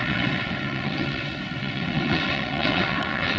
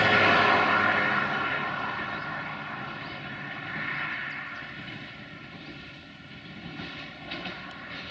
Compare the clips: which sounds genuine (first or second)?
second